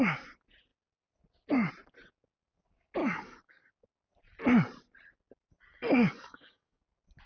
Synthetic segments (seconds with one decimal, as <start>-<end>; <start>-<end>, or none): 3.0-3.7; 5.7-6.8